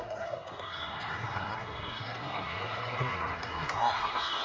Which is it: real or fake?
fake